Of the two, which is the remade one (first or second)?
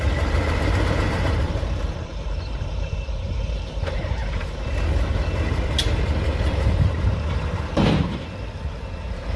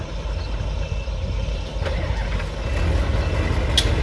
first